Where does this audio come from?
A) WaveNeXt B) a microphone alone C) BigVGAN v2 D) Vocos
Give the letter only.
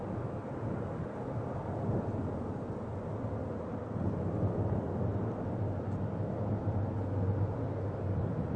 B